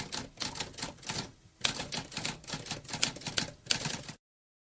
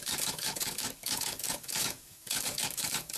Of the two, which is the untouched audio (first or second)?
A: first